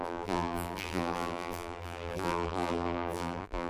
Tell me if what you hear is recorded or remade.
remade